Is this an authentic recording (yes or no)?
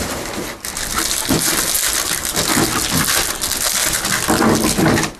yes